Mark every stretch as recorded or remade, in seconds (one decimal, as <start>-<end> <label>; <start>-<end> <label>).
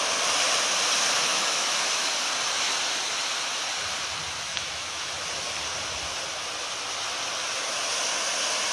0.0-1.3 recorded; 1.3-2.1 remade; 2.1-4.5 recorded; 4.5-5.1 remade; 5.1-8.7 recorded